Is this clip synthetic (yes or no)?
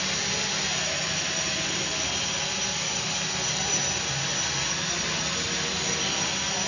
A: no